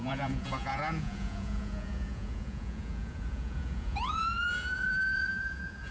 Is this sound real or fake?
fake